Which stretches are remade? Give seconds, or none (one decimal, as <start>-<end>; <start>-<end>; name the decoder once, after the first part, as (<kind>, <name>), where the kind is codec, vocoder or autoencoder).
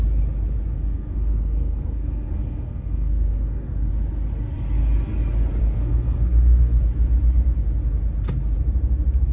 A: 0.7-3.9 (codec, SNAC); 5.6-6.8